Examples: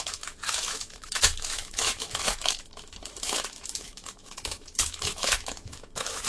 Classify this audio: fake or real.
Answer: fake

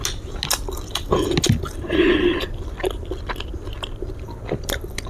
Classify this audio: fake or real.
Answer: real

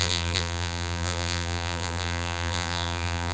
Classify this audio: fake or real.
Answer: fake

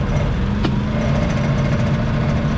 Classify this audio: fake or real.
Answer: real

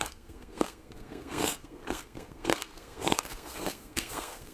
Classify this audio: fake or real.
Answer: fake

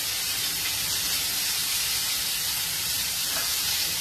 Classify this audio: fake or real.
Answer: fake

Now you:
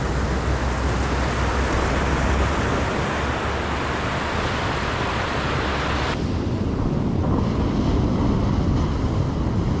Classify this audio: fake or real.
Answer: real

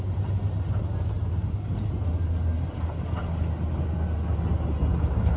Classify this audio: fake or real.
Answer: real